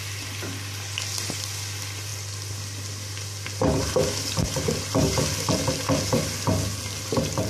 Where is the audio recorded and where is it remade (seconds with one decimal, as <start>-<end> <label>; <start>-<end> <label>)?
0.0-7.5 recorded